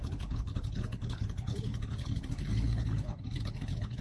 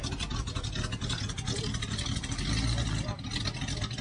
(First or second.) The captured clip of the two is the second